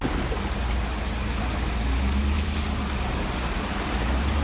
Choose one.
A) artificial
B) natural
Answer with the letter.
B